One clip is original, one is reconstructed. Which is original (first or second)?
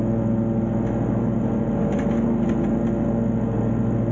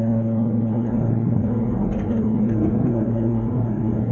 first